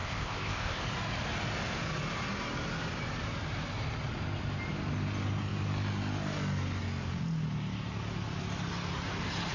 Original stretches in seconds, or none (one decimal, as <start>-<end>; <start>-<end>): 0.8-9.5